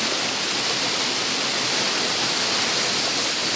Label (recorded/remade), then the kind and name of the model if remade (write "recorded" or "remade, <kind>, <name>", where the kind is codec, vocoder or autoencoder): recorded